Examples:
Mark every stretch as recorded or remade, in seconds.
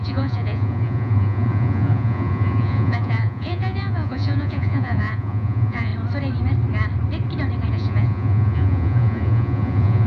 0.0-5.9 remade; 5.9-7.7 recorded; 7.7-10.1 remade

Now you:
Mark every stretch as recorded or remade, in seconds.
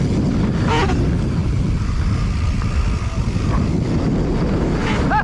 0.0-1.4 recorded; 1.4-2.1 remade; 2.1-5.2 recorded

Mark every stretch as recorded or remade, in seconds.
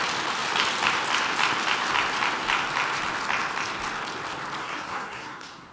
0.0-4.6 recorded; 4.6-5.7 remade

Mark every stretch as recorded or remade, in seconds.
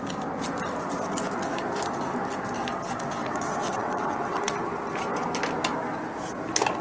0.0-3.2 recorded; 3.2-4.5 remade; 4.5-6.8 recorded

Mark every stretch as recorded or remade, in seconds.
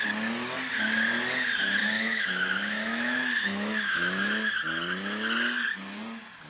0.0-1.8 recorded; 1.8-4.5 remade; 4.5-6.5 recorded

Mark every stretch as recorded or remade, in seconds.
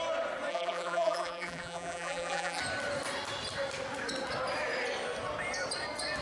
0.0-0.5 recorded; 0.5-2.6 remade; 2.6-6.2 recorded